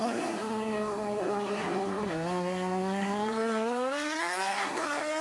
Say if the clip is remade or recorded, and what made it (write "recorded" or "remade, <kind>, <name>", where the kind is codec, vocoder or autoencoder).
remade, codec, SNAC